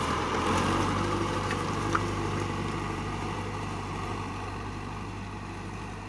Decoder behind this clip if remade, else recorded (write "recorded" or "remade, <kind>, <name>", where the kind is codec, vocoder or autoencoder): remade, vocoder, BigVGAN v2